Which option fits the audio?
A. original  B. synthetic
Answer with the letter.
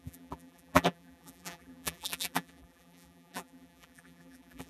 B